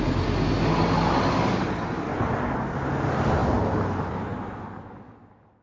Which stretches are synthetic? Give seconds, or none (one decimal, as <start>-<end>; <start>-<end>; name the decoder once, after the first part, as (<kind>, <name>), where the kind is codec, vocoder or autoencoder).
none